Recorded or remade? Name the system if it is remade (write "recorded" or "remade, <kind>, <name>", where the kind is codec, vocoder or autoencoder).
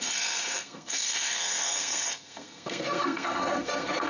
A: remade, codec, SNAC